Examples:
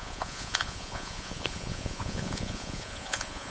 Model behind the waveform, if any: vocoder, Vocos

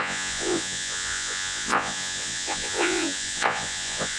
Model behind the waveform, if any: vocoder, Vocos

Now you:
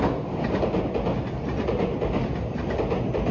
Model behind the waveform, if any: none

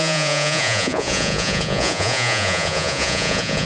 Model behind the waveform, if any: vocoder, Vocos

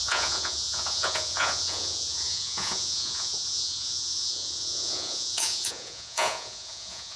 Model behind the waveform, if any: vocoder, Vocos